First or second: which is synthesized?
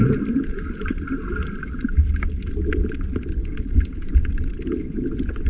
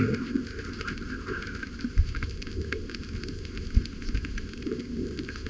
second